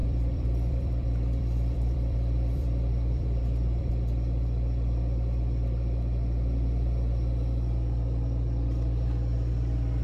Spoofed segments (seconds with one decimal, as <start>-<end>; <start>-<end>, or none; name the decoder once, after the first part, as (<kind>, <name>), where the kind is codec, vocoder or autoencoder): 0.0-3.9 (vocoder, BigVGAN v2)